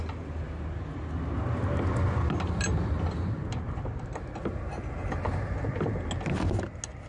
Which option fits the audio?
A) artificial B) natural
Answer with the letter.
B